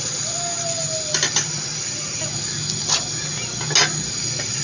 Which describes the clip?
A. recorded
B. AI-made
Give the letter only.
A